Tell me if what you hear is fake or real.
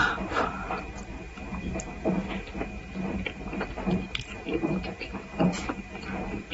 fake